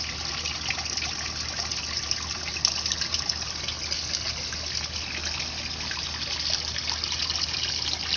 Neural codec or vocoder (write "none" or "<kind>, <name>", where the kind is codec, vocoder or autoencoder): none